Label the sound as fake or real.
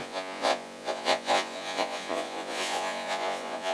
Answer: fake